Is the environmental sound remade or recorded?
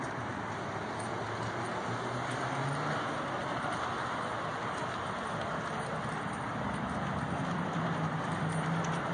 recorded